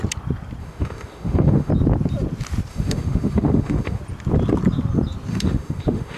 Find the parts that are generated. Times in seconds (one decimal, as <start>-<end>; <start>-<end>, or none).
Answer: 0.6-1.7; 2.7-4.0; 5.3-6.2